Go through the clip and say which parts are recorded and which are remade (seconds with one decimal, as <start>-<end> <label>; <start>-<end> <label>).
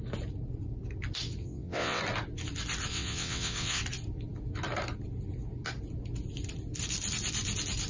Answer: 0.0-1.4 recorded; 1.4-2.0 remade; 2.0-2.9 recorded; 2.9-3.8 remade; 3.8-7.9 recorded